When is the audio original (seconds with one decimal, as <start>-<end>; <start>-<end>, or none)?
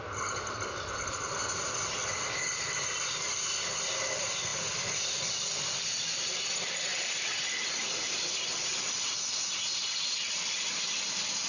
0.0-11.5